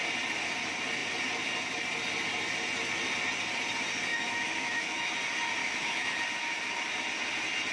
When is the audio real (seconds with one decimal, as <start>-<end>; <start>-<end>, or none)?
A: 0.0-4.1; 5.1-5.6; 6.2-7.7